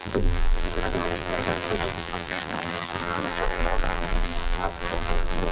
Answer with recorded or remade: remade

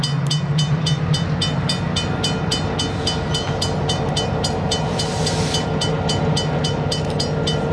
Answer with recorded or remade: recorded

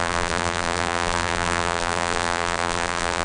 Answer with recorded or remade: remade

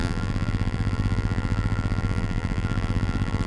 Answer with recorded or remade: remade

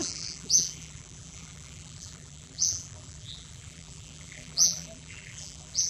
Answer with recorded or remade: remade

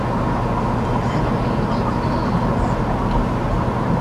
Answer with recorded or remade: recorded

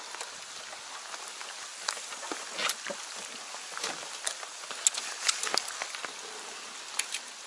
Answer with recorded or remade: recorded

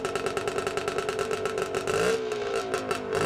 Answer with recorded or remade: recorded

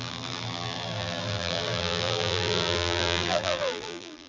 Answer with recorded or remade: remade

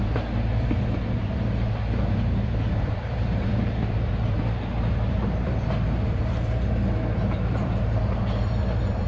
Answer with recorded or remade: remade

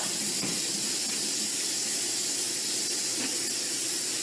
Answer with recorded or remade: recorded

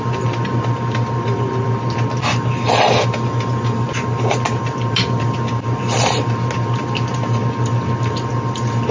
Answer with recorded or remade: recorded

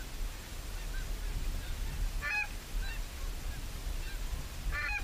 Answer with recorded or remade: recorded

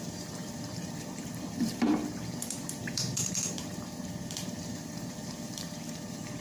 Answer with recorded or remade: remade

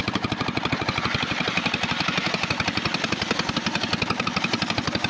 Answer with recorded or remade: remade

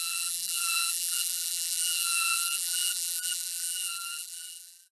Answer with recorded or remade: remade